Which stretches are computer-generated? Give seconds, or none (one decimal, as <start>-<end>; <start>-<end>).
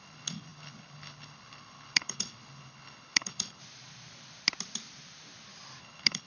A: 0.0-3.6; 5.8-6.3